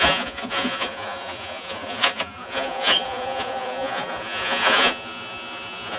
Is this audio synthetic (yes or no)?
yes